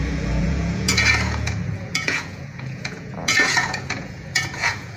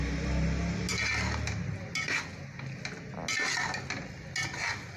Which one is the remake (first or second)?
first